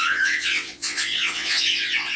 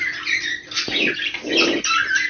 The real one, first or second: second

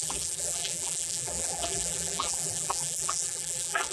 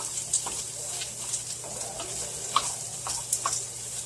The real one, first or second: second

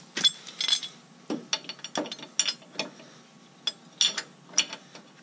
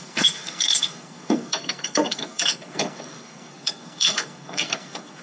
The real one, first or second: first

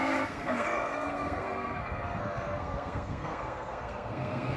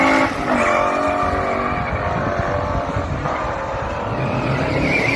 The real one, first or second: second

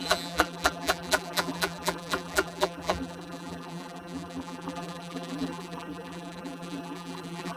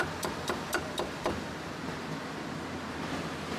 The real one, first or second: second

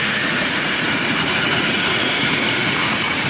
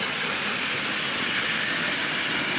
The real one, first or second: second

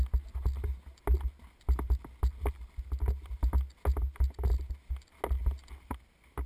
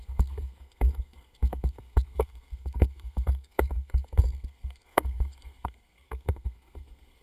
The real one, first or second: first